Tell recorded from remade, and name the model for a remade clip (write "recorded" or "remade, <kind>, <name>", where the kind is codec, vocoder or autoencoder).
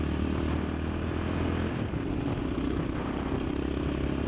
recorded